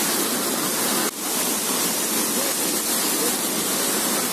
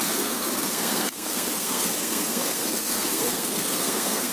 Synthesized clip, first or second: second